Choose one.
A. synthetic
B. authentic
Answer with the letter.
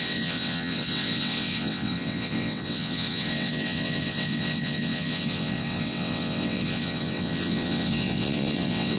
A